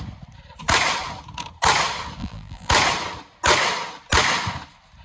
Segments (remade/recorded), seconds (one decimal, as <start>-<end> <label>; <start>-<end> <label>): 0.0-2.2 recorded; 2.2-2.7 remade; 2.7-5.0 recorded